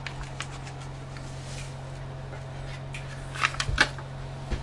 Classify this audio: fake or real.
real